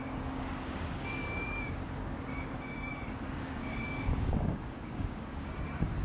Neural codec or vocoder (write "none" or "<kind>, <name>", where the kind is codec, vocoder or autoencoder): codec, DAC